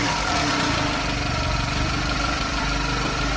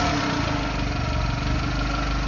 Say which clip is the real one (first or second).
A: second